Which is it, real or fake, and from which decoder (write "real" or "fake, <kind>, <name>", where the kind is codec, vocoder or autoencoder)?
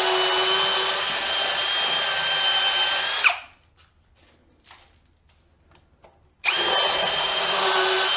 real